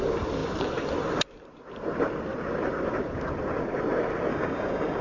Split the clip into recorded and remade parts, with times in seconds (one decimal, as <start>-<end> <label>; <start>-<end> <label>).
0.0-4.3 recorded; 4.3-5.0 remade